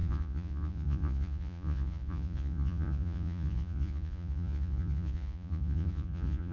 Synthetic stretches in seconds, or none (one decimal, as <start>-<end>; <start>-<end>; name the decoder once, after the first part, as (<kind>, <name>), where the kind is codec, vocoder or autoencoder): 0.0-6.5 (vocoder, Vocos)